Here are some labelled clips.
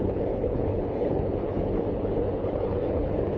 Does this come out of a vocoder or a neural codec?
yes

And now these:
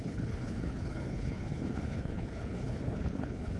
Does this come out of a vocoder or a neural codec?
yes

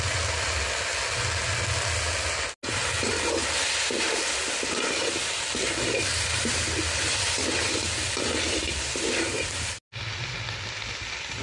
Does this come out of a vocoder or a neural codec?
no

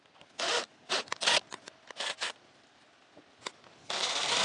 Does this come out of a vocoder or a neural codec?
no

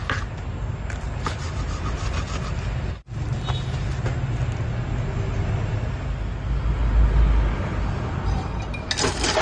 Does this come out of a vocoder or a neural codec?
no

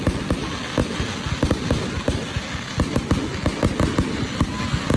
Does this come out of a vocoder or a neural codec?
no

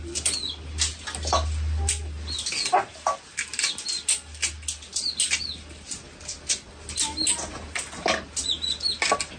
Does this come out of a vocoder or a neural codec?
no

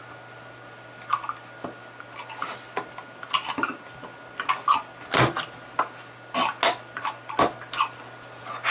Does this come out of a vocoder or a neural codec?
no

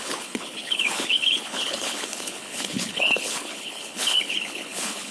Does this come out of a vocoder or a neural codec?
yes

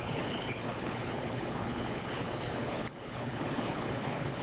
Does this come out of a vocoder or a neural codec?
yes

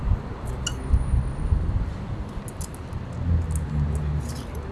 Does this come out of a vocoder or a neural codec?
no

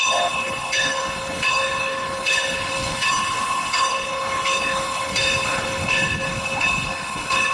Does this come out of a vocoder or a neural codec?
yes